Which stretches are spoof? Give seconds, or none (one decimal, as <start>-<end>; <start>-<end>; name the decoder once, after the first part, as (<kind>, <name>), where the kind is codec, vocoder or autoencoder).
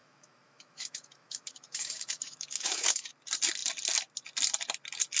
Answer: 0.0-3.1 (autoencoder, DAC-VAE)